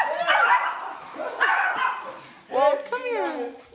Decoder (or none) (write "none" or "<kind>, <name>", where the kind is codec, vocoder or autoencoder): none